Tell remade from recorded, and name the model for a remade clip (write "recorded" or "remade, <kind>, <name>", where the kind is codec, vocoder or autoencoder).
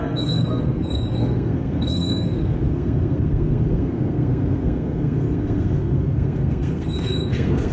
remade, codec, SNAC